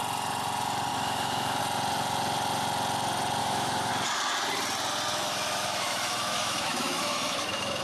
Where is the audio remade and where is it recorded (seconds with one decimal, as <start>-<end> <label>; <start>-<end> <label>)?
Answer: 0.0-0.9 recorded; 0.9-1.6 remade; 1.6-3.4 recorded; 3.4-3.9 remade; 3.9-5.1 recorded; 5.1-7.8 remade